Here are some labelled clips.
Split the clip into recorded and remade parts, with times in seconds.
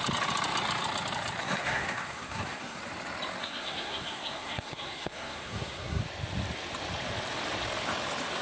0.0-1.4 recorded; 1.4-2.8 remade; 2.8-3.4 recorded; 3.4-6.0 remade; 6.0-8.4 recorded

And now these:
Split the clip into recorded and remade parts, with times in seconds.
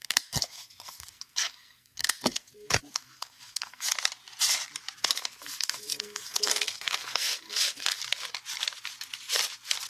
0.0-3.9 remade; 3.9-5.0 recorded; 5.0-8.0 remade; 8.0-9.9 recorded